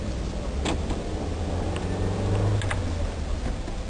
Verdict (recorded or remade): recorded